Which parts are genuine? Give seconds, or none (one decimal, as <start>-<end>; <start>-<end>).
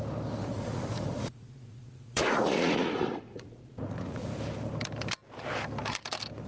0.0-0.4; 4.3-6.5